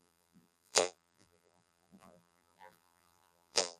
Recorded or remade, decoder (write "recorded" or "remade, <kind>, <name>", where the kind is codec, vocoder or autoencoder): remade, vocoder, BigVGAN v2